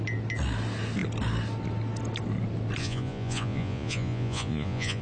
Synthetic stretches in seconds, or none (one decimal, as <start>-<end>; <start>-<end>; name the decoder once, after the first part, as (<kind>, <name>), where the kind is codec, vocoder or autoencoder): 2.8-5.0 (vocoder, Vocos)